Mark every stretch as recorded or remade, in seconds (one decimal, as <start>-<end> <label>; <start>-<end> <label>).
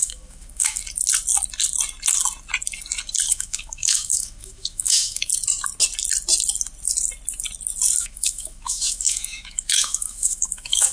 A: 0.0-0.8 remade; 0.8-3.3 recorded; 3.3-5.3 remade; 5.3-8.0 recorded; 8.0-10.9 remade